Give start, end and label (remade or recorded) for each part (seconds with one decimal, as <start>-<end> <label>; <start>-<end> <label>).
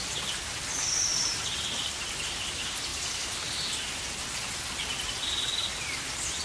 0.0-1.1 recorded; 1.1-1.9 remade; 1.9-6.4 recorded